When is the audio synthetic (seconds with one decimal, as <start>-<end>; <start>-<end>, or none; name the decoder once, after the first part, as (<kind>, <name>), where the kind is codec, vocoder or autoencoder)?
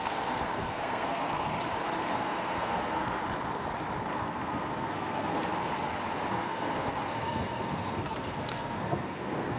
0.0-1.5 (codec, SNAC); 2.1-3.2; 4.1-5.5; 6.3-9.6